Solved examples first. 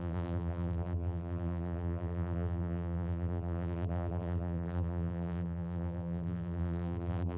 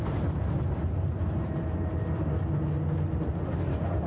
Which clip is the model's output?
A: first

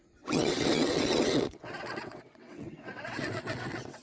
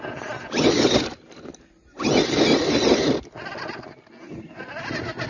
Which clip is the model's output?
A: first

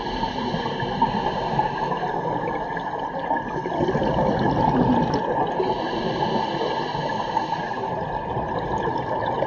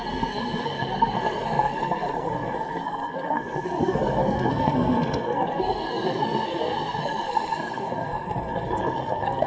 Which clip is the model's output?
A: second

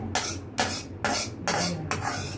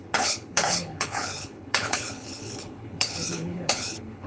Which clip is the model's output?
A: second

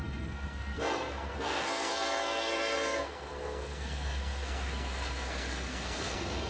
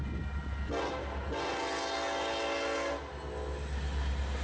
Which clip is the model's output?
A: first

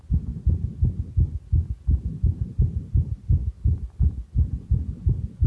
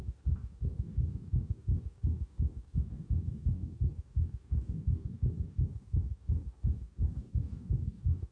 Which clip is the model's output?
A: second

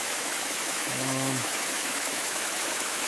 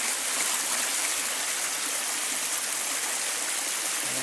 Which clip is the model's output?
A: first